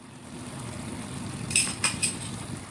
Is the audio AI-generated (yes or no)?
yes